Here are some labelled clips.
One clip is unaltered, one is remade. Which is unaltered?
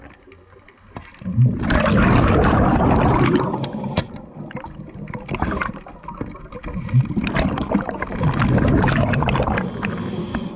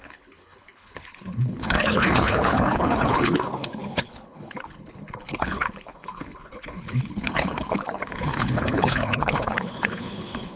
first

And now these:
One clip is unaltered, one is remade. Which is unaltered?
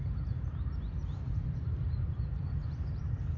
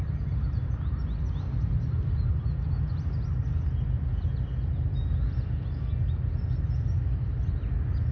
second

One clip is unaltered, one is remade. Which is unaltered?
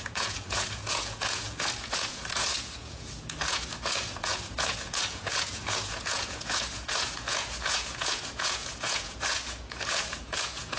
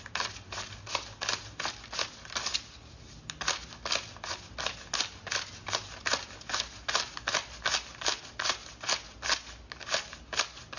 second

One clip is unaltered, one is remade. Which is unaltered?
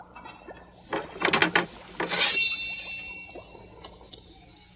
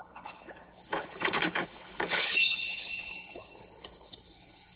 first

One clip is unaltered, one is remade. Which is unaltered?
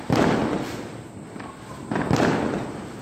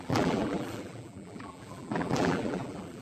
first